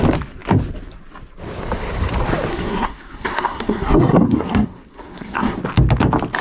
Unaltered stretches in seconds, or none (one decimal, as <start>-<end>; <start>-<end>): 0.0-2.5; 5.6-6.4